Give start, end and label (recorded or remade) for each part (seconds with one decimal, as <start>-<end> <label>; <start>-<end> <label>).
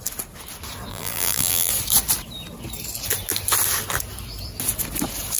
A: 0.0-0.9 recorded; 0.9-1.7 remade; 1.7-5.4 recorded